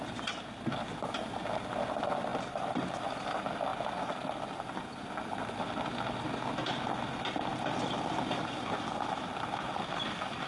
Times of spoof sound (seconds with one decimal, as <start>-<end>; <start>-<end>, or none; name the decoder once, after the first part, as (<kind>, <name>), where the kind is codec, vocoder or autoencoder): 3.7-6.2 (vocoder, BigVGAN v2); 7.5-10.5